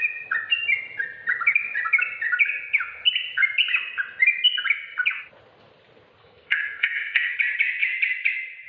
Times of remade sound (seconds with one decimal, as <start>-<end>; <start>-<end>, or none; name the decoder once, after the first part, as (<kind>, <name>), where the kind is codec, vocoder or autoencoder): 6.2-7.3 (codec, SNAC)